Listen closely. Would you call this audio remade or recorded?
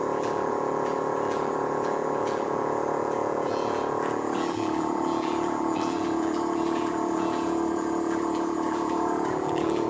remade